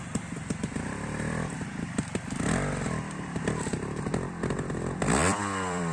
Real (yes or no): no